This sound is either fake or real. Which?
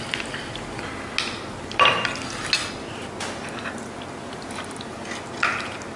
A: real